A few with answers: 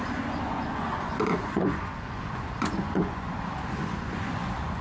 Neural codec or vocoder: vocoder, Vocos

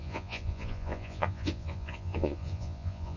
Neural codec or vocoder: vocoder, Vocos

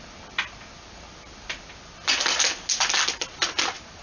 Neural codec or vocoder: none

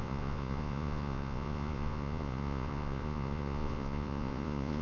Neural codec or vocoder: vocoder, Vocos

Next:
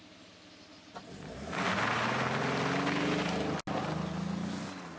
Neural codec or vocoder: none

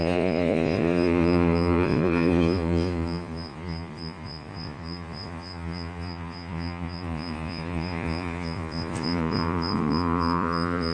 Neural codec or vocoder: vocoder, Vocos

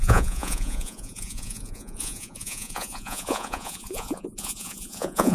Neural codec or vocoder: vocoder, Vocos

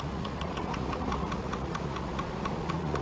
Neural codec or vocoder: vocoder, Vocos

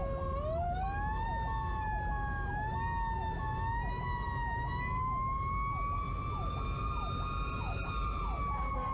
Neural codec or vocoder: none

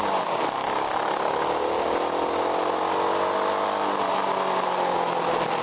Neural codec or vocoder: none